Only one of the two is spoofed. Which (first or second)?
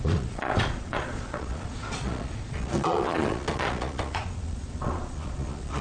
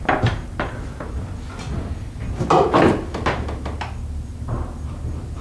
first